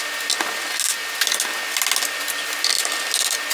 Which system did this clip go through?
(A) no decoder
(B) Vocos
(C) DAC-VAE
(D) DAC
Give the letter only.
A